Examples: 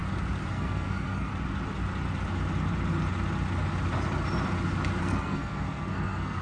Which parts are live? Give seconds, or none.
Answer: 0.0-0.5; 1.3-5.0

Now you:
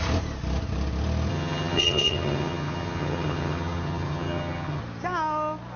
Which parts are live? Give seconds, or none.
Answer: 0.0-1.3; 4.8-5.8

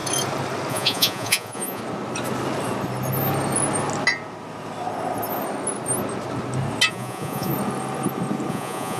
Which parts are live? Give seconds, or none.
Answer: 0.0-0.7; 1.8-6.9; 7.5-8.5

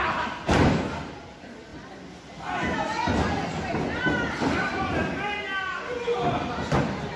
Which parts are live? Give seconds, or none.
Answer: 0.0-7.2